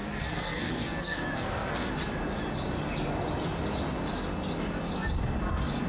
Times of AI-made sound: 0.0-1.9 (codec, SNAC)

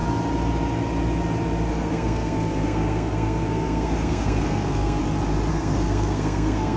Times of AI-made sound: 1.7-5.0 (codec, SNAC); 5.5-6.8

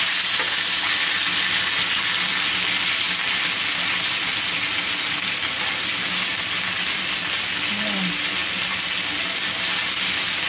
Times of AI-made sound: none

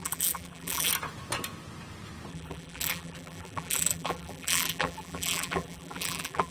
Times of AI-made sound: 0.0-0.9 (vocoder, BigVGAN v2); 2.3-6.5

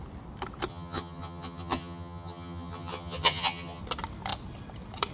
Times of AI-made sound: 0.7-3.8 (vocoder, HiFi-GAN)

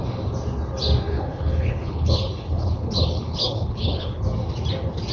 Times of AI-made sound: 1.1-4.2 (codec, HILCodec)

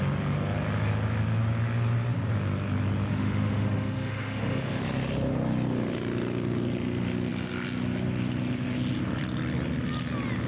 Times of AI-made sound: 3.1-4.8 (autoencoder, DAC-VAE)